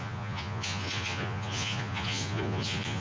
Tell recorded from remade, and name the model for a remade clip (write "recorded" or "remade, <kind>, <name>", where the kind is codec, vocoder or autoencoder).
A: remade, vocoder, Vocos